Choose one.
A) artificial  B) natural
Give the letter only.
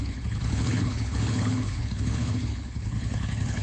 A